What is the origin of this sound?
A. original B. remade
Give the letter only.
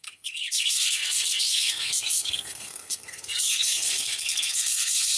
B